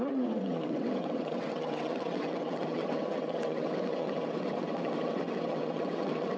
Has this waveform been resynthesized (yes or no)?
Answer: yes